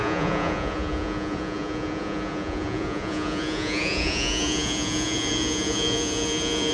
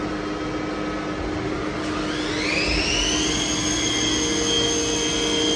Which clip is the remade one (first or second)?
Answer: first